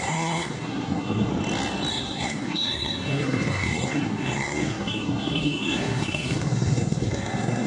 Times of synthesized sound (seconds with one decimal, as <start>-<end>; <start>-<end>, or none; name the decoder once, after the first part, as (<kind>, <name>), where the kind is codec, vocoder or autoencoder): 0.0-1.3 (codec, SNAC); 1.9-7.7